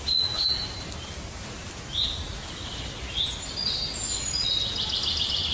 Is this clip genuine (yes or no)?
yes